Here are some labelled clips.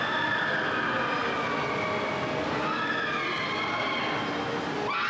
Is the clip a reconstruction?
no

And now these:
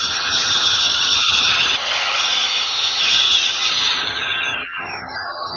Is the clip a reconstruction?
yes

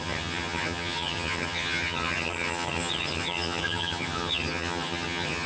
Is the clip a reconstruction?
yes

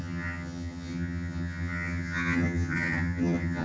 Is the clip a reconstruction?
yes